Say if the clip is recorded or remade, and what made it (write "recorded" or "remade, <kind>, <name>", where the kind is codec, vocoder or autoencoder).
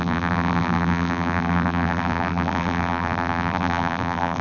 remade, vocoder, BigVGAN v2